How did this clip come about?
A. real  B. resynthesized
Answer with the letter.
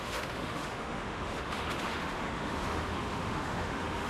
B